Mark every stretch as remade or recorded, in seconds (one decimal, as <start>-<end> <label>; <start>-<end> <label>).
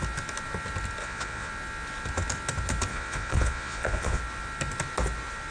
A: 0.0-1.0 recorded; 1.0-1.5 remade; 1.5-2.9 recorded; 2.9-4.2 remade; 4.2-5.5 recorded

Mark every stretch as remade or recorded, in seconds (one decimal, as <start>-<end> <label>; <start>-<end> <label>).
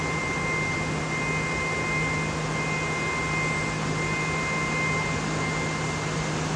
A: 0.0-6.6 recorded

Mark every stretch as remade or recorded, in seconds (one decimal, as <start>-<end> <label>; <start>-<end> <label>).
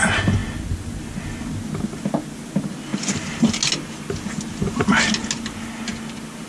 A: 0.0-6.5 recorded